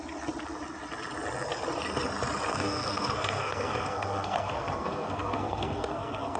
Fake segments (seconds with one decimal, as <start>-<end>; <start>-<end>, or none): 2.5-6.4